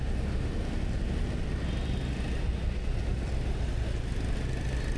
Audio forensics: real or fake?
real